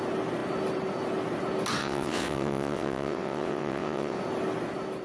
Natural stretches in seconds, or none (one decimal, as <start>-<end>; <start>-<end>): 0.0-1.8; 4.2-5.0